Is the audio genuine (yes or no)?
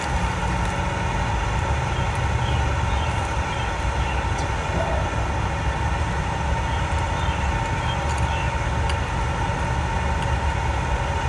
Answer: yes